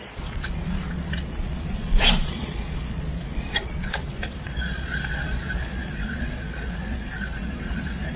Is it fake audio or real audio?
fake